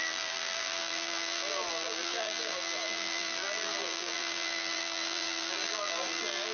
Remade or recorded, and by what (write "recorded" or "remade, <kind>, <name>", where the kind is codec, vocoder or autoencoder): remade, vocoder, BigVGAN v2